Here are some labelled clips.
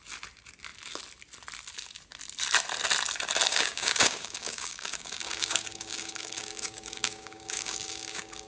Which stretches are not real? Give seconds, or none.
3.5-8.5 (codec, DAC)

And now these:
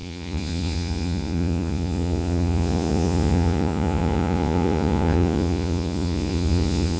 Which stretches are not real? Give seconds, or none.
0.0-7.0 (vocoder, Vocos)

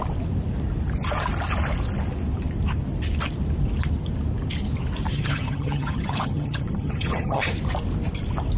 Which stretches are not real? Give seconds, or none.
5.1-7.5 (vocoder, HiFi-GAN)

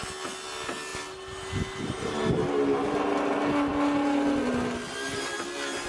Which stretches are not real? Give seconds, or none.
none

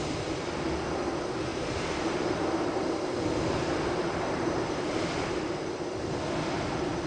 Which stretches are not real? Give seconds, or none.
1.5-5.8 (vocoder, BigVGAN v2)

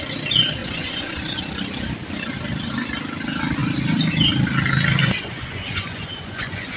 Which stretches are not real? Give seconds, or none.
0.6-1.4 (vocoder, Vocos); 5.0-6.8

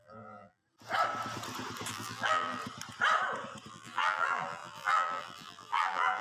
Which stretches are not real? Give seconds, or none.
0.0-0.6 (vocoder, BigVGAN v2); 1.9-2.6; 3.7-6.2

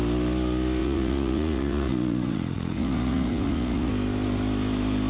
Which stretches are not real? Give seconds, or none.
0.8-3.9 (vocoder, Vocos)